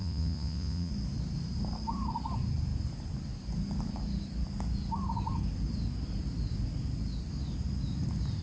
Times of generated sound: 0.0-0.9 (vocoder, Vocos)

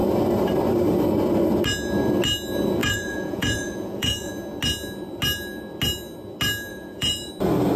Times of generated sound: 2.8-4.3 (vocoder, Vocos); 6.7-7.3

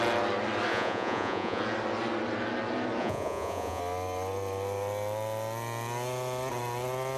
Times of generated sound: 0.7-1.6 (vocoder, Vocos); 3.0-3.8